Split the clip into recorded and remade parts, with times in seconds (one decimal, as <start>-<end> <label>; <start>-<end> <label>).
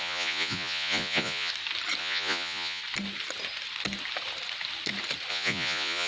0.0-1.5 remade; 1.5-2.0 recorded; 2.0-2.8 remade; 2.8-5.3 recorded; 5.3-6.1 remade